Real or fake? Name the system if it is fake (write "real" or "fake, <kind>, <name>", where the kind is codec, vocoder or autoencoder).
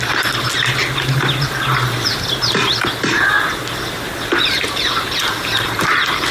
real